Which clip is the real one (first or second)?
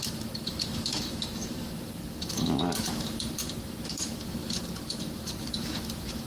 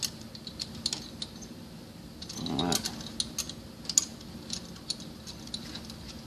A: second